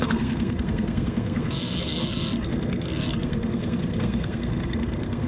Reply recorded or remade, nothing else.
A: remade